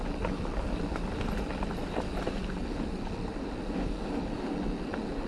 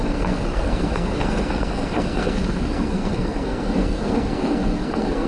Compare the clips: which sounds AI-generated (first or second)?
second